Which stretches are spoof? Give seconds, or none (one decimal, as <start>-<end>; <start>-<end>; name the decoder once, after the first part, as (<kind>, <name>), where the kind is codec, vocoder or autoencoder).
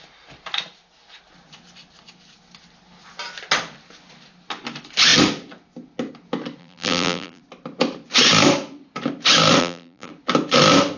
6.6-7.4 (vocoder, BigVGAN v2); 9.6-10.1